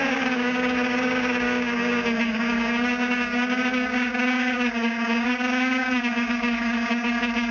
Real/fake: fake